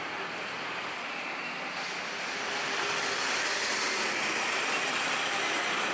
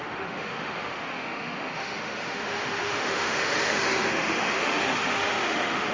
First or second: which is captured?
first